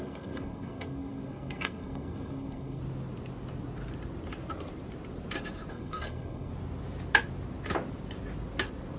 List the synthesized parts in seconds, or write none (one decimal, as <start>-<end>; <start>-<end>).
0.0-2.8; 5.7-6.5